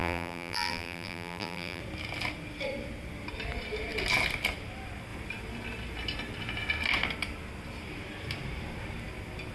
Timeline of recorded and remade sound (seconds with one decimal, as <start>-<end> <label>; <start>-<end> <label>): 0.0-1.8 remade; 1.8-9.5 recorded